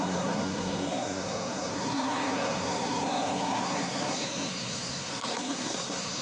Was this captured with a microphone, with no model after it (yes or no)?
no